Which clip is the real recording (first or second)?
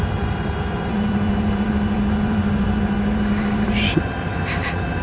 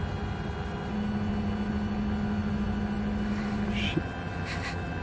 second